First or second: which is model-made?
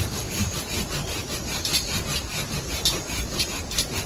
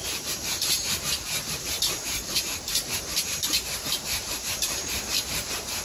second